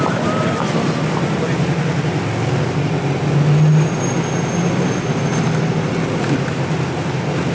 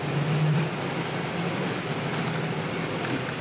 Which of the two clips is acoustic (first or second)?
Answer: first